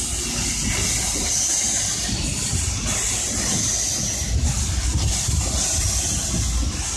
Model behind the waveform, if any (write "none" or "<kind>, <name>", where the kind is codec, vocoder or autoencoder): none